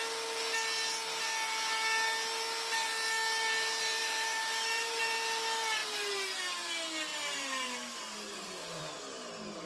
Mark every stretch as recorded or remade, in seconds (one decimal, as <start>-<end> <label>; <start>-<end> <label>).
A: 0.0-4.0 recorded; 4.0-5.0 remade; 5.0-5.8 recorded; 5.8-6.4 remade; 6.4-7.1 recorded; 7.1-8.8 remade; 8.8-9.7 recorded